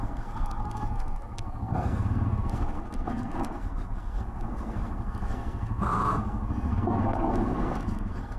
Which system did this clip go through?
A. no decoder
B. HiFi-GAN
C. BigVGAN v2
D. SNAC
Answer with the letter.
D